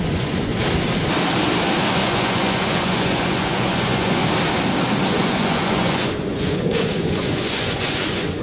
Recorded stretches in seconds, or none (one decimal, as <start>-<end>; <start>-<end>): 0.5-1.9; 4.2-5.1